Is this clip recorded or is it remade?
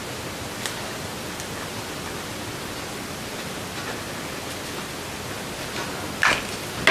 recorded